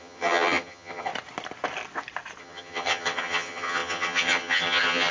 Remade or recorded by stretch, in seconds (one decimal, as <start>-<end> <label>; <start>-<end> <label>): 0.0-1.1 remade; 1.1-2.4 recorded; 2.4-5.1 remade